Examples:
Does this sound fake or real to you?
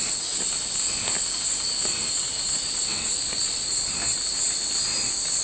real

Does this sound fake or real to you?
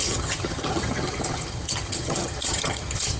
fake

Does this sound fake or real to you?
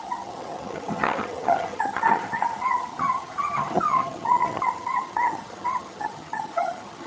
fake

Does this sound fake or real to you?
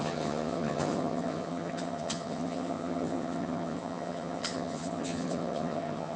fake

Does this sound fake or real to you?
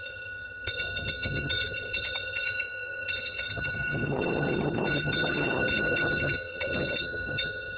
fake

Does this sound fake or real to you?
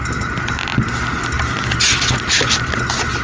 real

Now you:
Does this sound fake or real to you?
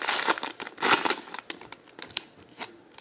real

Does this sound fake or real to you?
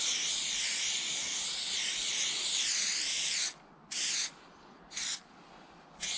real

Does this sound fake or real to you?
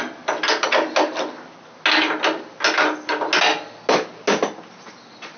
real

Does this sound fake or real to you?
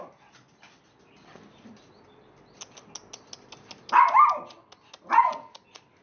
real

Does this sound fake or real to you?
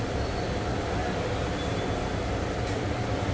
real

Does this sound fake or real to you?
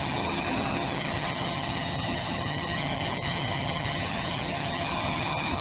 fake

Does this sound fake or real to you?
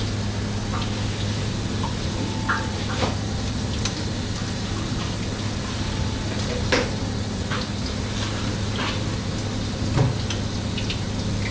real